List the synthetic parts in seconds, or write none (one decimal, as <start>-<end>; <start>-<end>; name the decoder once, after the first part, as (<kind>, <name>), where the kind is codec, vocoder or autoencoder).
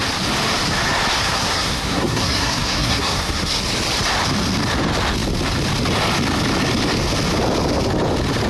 1.2-3.6 (codec, SNAC)